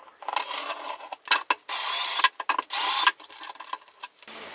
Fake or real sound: real